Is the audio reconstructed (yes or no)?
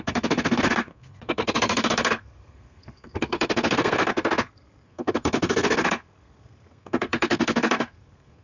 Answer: yes